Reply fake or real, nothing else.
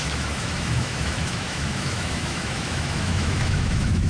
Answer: fake